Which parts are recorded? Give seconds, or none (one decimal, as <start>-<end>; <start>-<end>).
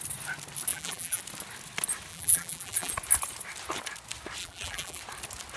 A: 0.0-0.7; 1.2-2.1; 2.9-4.4; 5.0-5.6